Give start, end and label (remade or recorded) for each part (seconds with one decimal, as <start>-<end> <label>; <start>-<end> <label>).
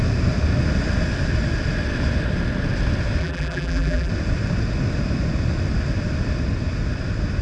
0.0-3.2 recorded; 3.2-4.1 remade; 4.1-7.4 recorded